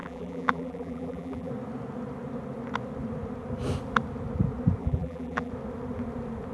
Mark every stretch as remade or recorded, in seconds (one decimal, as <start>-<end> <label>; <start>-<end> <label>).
0.0-1.5 remade; 1.5-4.8 recorded; 4.8-5.5 remade; 5.5-6.5 recorded